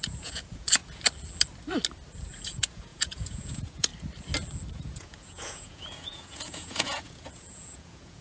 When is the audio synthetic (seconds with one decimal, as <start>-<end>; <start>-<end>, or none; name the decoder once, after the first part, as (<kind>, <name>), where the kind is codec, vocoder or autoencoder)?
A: 0.0-0.8 (vocoder, Vocos); 2.3-3.9; 4.7-8.2